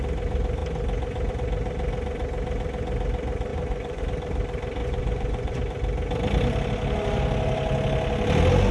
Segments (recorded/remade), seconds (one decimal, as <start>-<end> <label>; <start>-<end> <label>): 0.0-3.5 recorded; 3.5-4.0 remade; 4.0-4.8 recorded; 4.8-5.6 remade; 5.6-8.7 recorded

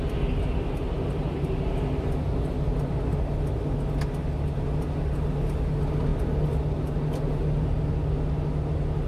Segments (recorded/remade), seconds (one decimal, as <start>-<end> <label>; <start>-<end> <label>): 0.0-9.1 recorded

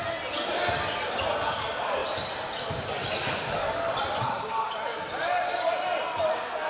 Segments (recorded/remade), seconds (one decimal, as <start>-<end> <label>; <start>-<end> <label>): 0.0-6.7 recorded

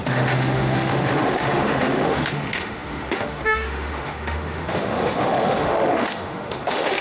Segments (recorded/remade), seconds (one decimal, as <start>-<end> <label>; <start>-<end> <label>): 0.0-7.0 remade

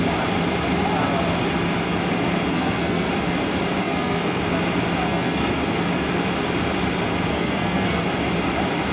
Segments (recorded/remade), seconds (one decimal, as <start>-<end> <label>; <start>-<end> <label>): 0.0-2.5 recorded; 2.5-3.1 remade; 3.1-3.8 recorded; 3.8-4.4 remade; 4.4-5.0 recorded; 5.0-5.5 remade; 5.5-7.3 recorded; 7.3-8.0 remade; 8.0-8.9 recorded

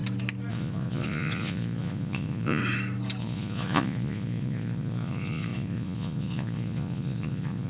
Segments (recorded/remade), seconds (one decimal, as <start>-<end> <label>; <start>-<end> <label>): 0.0-0.5 recorded; 0.5-2.6 remade; 2.6-3.2 recorded; 3.2-7.7 remade

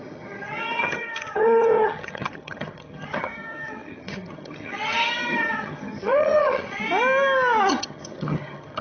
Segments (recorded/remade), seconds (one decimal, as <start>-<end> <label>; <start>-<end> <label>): 0.0-6.8 remade; 6.8-7.7 recorded; 7.7-8.8 remade

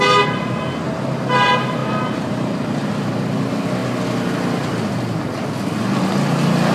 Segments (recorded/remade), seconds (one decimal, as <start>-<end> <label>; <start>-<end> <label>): 0.0-1.8 recorded; 1.8-2.8 remade; 2.8-6.7 recorded